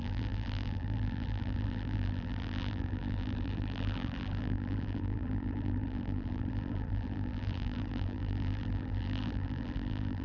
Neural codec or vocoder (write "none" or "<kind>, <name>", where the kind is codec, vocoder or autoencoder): vocoder, BigVGAN v2